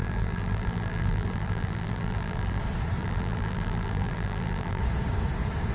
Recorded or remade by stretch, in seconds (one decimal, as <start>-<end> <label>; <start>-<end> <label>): 0.0-2.6 remade; 2.6-3.0 recorded; 3.0-4.8 remade; 4.8-5.7 recorded